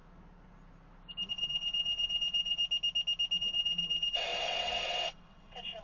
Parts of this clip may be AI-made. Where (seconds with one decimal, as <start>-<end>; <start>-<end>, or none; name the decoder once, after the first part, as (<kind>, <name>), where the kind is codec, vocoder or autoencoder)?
1.3-2.6 (vocoder, WaveNeXt); 3.4-5.8